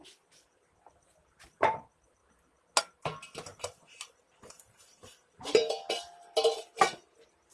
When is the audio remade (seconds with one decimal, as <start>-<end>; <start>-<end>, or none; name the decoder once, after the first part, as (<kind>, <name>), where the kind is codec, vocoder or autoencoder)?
0.0-2.2 (vocoder, BigVGAN v2); 2.8-3.5; 4.2-7.5